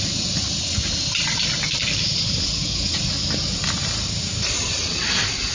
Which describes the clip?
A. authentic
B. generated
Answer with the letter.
A